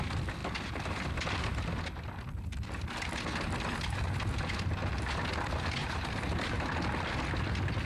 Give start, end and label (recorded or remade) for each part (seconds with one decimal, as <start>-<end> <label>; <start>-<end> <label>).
0.0-5.8 recorded; 5.8-6.7 remade; 6.7-7.9 recorded